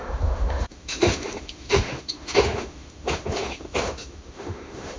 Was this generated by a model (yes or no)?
yes